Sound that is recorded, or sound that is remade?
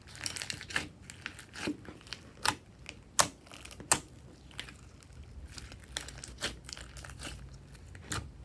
recorded